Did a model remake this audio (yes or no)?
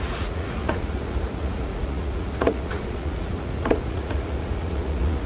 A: yes